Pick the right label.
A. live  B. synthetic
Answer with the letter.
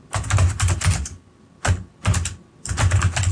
A